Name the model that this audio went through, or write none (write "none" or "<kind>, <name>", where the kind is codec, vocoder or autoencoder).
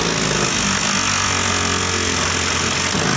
none